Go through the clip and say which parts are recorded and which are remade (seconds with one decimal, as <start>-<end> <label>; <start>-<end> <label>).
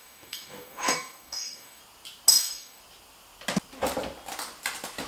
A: 0.0-1.8 remade; 1.8-2.3 recorded; 2.3-2.8 remade; 2.8-5.1 recorded